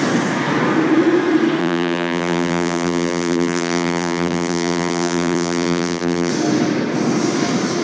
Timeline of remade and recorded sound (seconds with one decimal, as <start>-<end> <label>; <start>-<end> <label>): 0.0-1.6 recorded; 1.6-6.3 remade; 6.3-7.8 recorded